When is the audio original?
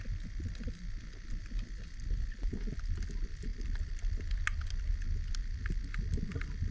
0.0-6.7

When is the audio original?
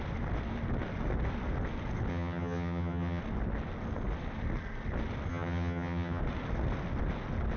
0.0-2.1; 3.2-5.3; 6.2-7.6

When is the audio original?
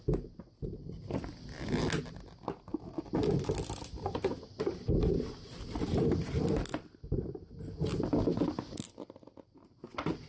0.0-10.3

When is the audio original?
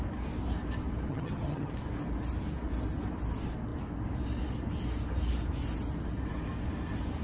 0.0-1.1; 1.7-7.2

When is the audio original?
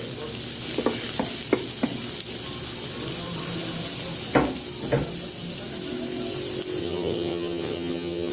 0.0-6.8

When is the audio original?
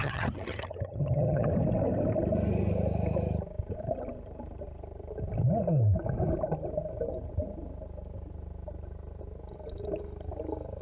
1.5-10.8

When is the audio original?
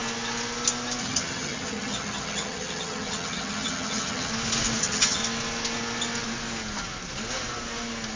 0.0-1.0; 4.3-4.8; 5.2-8.2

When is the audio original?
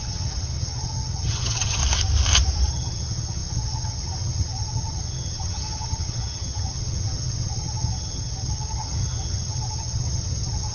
1.8-2.7